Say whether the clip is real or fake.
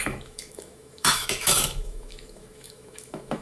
fake